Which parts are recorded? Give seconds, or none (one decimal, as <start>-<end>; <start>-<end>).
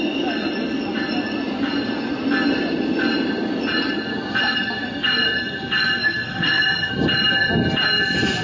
0.0-6.0; 6.9-8.4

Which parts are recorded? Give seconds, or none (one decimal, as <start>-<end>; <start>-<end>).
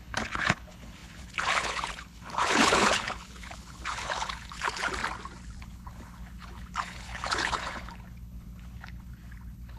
5.0-5.6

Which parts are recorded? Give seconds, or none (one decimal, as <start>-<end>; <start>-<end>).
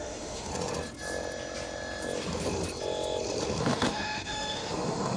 0.5-3.6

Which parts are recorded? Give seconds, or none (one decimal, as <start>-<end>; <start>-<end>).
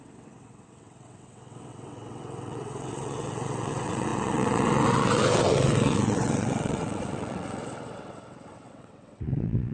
none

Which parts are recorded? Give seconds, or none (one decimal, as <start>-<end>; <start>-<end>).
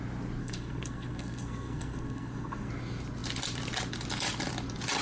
0.0-0.4; 2.7-5.0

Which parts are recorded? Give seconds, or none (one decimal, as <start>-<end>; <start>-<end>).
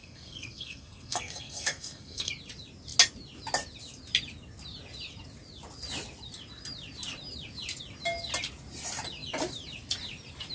2.3-10.5